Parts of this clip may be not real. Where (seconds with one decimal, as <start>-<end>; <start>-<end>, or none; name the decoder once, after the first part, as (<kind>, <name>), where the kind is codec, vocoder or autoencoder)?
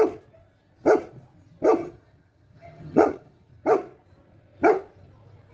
1.8-3.5 (vocoder, HiFi-GAN)